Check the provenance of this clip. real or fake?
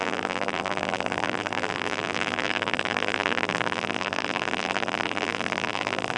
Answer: fake